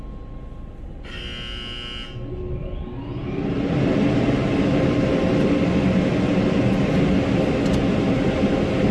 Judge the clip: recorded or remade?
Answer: recorded